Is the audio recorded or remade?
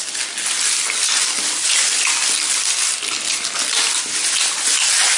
recorded